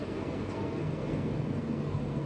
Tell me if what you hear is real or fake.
fake